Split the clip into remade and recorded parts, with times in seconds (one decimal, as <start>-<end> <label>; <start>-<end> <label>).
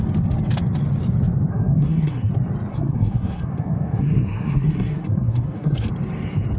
0.0-1.5 recorded; 1.5-2.3 remade; 2.3-2.7 recorded; 2.7-5.9 remade; 5.9-6.6 recorded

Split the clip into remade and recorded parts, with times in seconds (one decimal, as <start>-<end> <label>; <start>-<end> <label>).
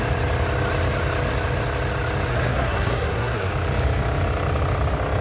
0.0-2.3 recorded; 2.3-3.5 remade; 3.5-5.2 recorded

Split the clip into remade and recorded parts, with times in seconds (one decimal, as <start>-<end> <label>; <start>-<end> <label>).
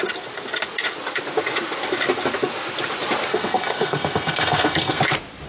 0.0-3.3 recorded; 3.3-5.0 remade; 5.0-5.5 recorded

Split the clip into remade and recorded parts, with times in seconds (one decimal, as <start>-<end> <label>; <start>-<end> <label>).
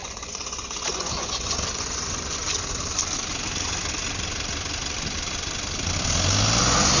0.0-2.4 remade; 2.4-6.6 recorded; 6.6-7.0 remade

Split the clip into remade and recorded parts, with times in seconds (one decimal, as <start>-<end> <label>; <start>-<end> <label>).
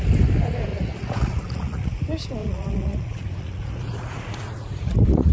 0.0-0.7 recorded; 0.7-2.0 remade; 2.0-2.4 recorded; 2.4-5.3 remade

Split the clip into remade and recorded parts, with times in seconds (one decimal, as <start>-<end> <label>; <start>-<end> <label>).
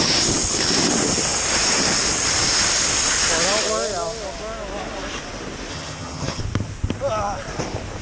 0.0-5.7 recorded; 5.7-6.4 remade; 6.4-8.0 recorded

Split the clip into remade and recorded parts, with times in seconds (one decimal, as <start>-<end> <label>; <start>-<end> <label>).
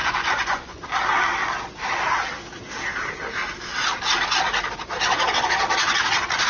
0.0-0.8 remade; 0.8-6.5 recorded